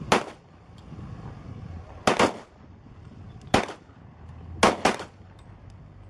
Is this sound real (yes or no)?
yes